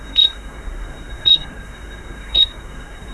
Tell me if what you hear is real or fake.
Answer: fake